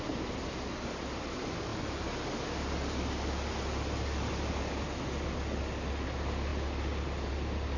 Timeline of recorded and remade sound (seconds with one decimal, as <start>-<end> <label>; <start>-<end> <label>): 0.0-7.8 recorded